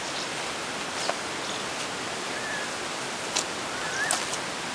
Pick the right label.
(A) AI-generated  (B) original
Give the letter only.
B